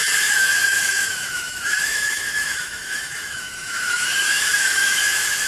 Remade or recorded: remade